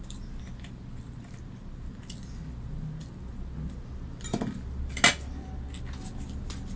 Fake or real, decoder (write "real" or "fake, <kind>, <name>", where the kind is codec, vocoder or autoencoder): real